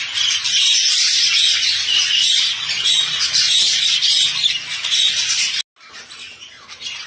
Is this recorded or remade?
recorded